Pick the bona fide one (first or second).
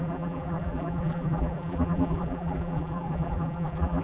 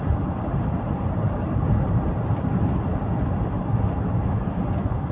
second